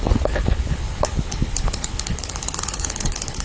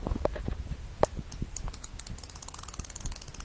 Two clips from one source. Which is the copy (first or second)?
first